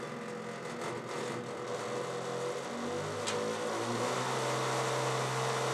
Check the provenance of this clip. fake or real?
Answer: real